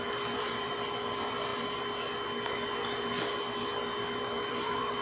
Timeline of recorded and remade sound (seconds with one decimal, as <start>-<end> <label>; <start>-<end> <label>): 0.0-1.5 remade; 1.5-4.5 recorded; 4.5-5.0 remade